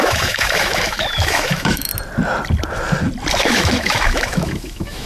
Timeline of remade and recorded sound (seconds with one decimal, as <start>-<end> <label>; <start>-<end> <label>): 0.0-1.9 remade; 1.9-3.4 recorded; 3.4-5.1 remade